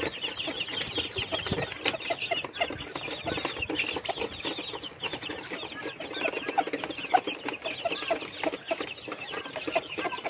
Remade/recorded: recorded